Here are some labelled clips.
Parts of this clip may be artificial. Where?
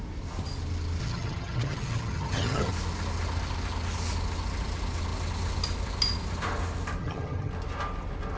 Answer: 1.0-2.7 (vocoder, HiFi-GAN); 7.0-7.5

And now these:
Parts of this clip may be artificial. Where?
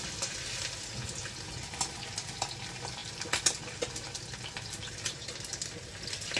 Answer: none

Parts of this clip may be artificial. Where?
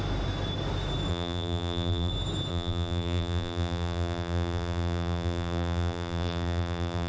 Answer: 1.1-2.1 (vocoder, BigVGAN v2); 2.5-7.1